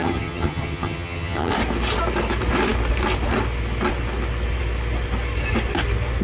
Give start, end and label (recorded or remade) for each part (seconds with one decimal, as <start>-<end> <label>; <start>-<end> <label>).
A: 0.0-1.5 remade; 1.5-6.2 recorded